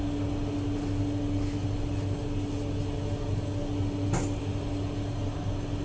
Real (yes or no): yes